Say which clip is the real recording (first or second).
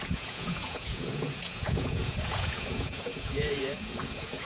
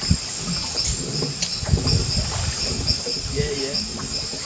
second